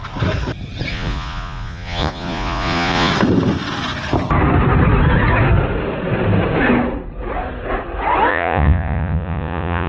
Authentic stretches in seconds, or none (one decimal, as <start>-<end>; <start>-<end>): 0.0-0.9; 3.1-8.3